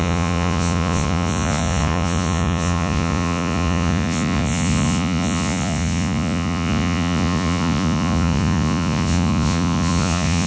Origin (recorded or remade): remade